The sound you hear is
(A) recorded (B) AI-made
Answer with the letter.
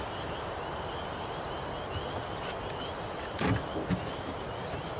A